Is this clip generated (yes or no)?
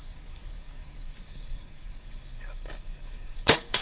yes